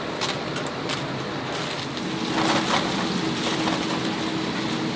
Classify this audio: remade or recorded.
recorded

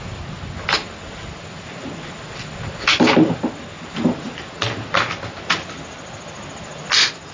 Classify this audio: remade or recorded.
recorded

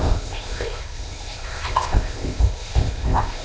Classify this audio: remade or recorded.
remade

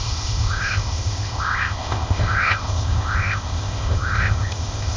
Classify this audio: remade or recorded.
remade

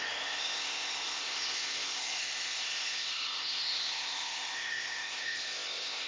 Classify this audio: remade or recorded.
remade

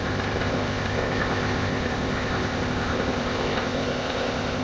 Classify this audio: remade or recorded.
remade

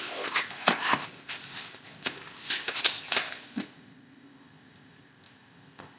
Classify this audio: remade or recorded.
remade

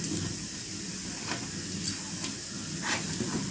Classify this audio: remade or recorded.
recorded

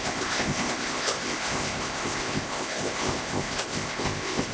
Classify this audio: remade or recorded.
remade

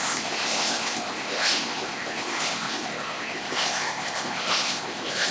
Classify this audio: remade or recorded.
remade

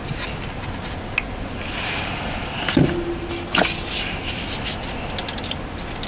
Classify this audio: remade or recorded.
recorded